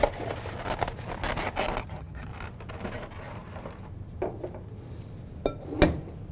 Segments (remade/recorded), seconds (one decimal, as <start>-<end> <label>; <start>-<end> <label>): 0.0-1.8 recorded; 1.8-2.3 remade; 2.3-6.3 recorded